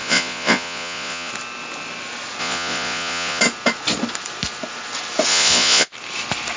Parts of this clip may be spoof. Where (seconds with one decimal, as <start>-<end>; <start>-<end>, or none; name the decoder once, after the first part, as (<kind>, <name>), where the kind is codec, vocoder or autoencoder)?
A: 0.0-1.3 (vocoder, Vocos); 2.4-3.4; 5.3-5.9